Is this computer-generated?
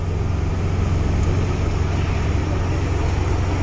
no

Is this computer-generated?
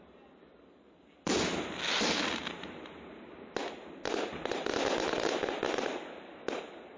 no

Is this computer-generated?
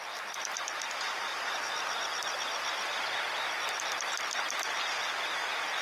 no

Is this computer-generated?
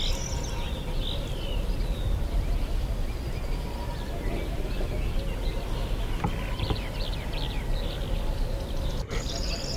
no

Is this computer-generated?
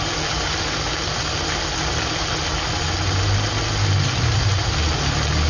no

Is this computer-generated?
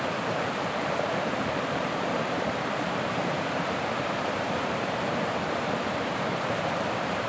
yes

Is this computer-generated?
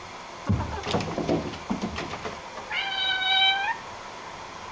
no